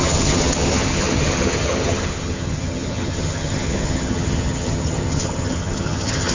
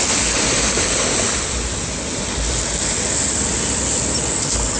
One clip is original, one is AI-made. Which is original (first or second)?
second